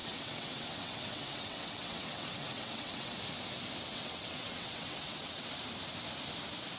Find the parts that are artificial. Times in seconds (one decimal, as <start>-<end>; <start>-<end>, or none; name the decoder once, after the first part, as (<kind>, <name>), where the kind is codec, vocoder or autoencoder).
0.0-3.2 (vocoder, WaveNeXt); 3.9-5.5